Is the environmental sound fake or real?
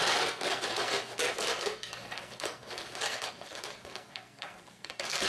fake